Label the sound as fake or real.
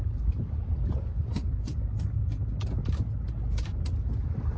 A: real